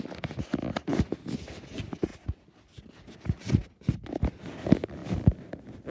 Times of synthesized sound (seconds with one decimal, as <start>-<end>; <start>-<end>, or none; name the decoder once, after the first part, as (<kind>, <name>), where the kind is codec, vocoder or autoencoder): none